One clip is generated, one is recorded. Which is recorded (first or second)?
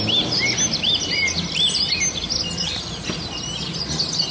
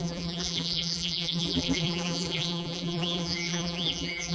first